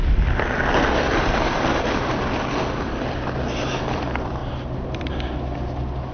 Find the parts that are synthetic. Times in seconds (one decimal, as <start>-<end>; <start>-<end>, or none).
none